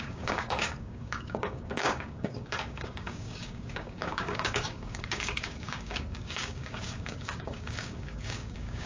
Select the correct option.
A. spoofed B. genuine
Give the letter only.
A